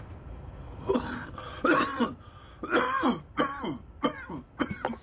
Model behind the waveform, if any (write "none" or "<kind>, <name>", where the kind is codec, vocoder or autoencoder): none